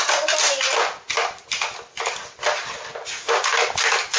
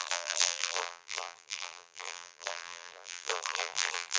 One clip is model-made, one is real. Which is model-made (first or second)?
second